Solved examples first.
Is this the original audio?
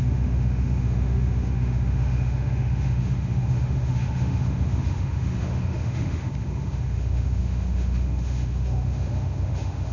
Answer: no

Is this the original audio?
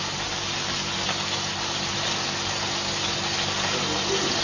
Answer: yes